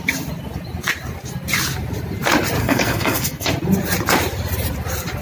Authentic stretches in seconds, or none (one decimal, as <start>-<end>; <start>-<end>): 0.0-2.6; 3.5-5.2